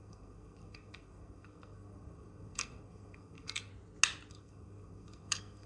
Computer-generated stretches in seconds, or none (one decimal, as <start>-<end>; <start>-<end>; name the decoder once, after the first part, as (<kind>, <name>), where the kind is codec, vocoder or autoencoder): 0.0-3.7 (codec, SNAC); 4.3-5.7